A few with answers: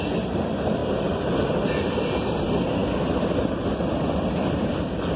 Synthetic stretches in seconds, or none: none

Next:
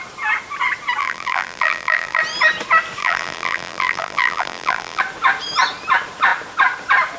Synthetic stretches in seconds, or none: 1.0-2.2 (vocoder, BigVGAN v2); 3.0-5.0